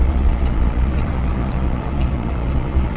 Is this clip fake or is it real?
fake